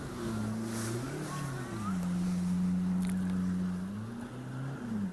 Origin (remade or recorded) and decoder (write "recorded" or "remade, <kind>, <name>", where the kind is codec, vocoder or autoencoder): recorded